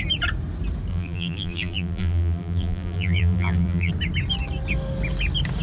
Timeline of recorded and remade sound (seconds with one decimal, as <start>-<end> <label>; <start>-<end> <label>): 0.0-0.9 recorded; 0.9-3.9 remade; 3.9-5.6 recorded

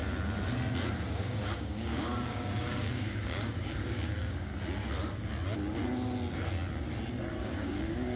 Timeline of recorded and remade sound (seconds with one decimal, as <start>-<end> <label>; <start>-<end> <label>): 0.0-1.0 recorded; 1.0-4.5 remade; 4.5-7.4 recorded; 7.4-8.2 remade